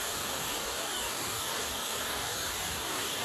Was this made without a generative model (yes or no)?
no